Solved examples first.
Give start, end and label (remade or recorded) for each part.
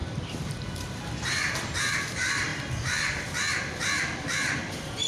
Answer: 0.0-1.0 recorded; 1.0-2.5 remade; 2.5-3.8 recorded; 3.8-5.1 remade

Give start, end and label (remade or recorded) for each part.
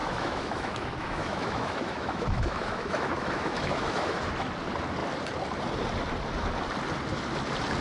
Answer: 0.0-4.3 remade; 4.3-7.8 recorded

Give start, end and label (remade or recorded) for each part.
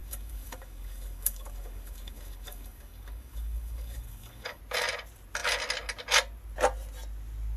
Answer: 0.0-4.6 remade; 4.6-7.6 recorded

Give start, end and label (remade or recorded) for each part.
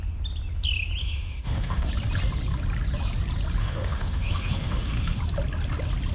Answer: 0.0-1.0 recorded; 1.0-1.9 remade; 1.9-3.6 recorded; 3.6-5.2 remade; 5.2-6.1 recorded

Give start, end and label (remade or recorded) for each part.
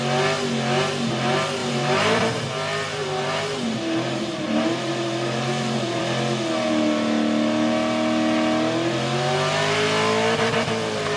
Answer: 0.0-1.6 recorded; 1.6-2.2 remade; 2.2-3.0 recorded; 3.0-6.0 remade; 6.0-11.2 recorded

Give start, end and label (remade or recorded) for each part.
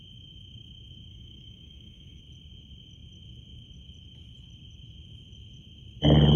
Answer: 0.0-1.1 recorded; 1.1-2.2 remade; 2.2-6.4 recorded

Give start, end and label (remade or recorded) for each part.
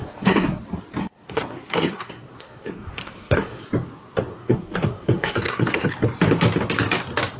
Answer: 0.0-0.6 remade; 0.6-1.0 recorded; 1.0-3.6 remade; 3.6-4.3 recorded; 4.3-5.9 remade; 5.9-7.4 recorded